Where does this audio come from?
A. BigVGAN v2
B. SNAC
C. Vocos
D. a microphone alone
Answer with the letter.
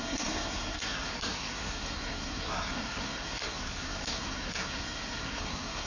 B